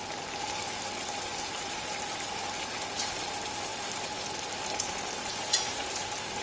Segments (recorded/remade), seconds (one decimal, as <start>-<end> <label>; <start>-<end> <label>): 0.0-5.3 recorded; 5.3-5.8 remade; 5.8-6.4 recorded